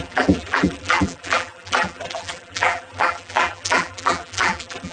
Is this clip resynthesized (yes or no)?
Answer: yes